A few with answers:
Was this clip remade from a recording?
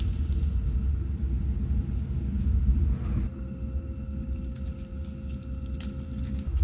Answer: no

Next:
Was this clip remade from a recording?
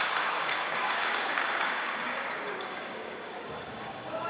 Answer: yes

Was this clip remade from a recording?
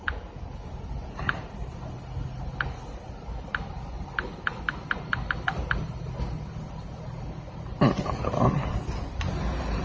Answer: no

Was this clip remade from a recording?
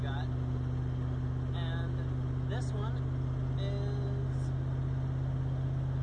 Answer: no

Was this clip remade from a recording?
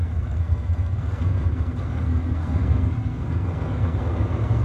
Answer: yes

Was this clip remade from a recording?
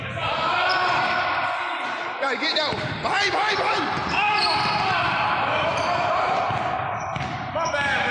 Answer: yes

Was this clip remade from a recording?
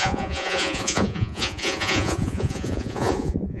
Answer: yes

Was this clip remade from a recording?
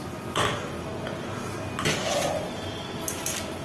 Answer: no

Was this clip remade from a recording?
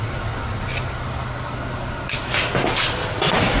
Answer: no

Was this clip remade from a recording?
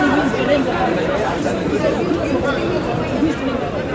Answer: yes